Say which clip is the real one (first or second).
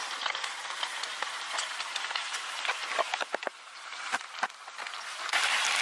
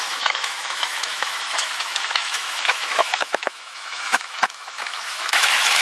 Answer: first